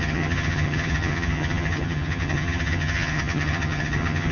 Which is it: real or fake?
fake